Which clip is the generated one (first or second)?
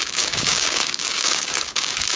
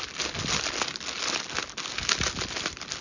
first